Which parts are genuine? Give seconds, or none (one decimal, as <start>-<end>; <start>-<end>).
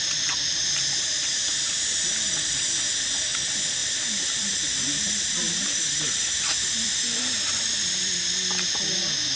0.0-1.3; 2.6-3.8; 8.3-9.4